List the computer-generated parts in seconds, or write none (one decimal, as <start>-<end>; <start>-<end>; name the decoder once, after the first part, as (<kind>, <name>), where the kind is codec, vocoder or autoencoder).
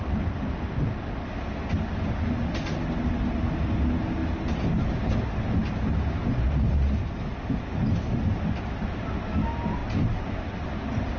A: none